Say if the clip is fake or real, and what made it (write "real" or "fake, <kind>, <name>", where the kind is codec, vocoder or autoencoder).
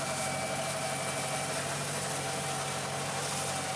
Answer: real